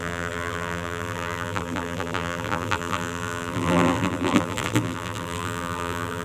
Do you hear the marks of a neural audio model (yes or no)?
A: yes